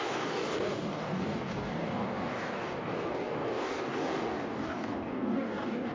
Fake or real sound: fake